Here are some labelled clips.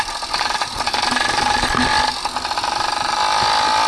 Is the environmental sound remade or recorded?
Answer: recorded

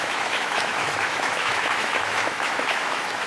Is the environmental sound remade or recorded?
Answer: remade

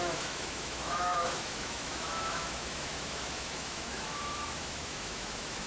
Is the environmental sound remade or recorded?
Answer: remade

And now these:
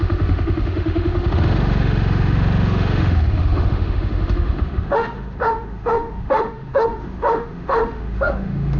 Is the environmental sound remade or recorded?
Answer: remade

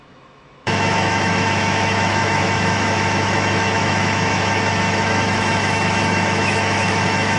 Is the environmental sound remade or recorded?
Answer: remade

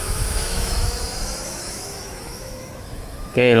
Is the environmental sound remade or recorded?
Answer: remade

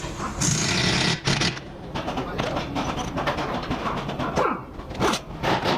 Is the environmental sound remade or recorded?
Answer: recorded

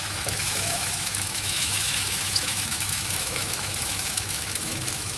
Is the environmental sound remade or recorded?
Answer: remade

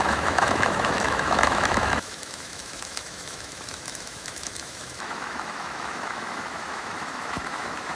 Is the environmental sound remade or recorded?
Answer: remade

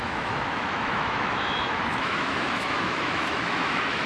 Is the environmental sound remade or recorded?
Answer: remade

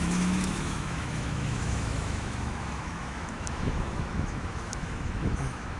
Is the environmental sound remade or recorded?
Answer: remade